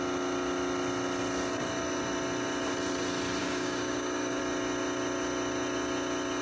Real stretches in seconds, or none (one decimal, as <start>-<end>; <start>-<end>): 0.0-3.4; 4.4-6.4